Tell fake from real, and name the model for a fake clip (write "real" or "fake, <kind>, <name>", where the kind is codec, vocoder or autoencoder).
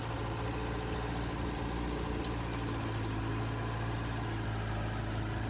real